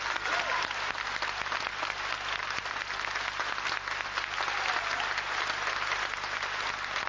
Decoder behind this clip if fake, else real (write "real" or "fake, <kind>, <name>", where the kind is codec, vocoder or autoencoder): real